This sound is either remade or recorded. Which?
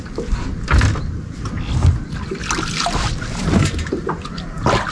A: recorded